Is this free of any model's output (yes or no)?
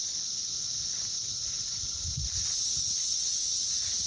yes